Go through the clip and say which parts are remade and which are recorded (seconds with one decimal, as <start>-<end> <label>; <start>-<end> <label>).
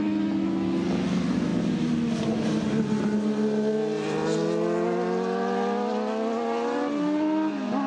0.0-7.9 recorded